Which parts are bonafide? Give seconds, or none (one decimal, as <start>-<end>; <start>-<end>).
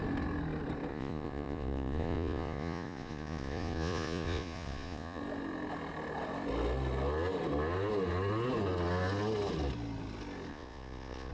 0.0-0.9; 5.2-10.5